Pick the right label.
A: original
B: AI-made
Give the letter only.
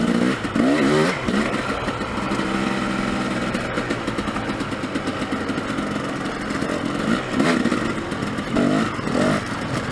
A